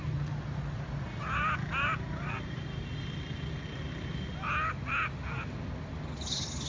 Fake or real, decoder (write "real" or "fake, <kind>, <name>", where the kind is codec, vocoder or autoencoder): real